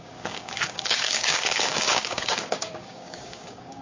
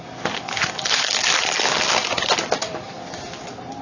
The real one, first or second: second